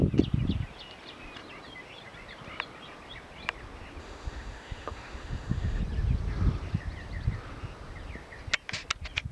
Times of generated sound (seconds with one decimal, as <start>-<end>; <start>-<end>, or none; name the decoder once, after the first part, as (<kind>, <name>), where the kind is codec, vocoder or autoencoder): 4.0-5.8 (autoencoder, DAC-VAE)